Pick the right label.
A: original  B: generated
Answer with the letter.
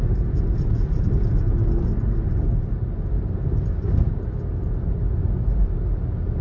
A